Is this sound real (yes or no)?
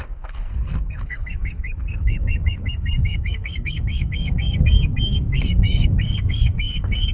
no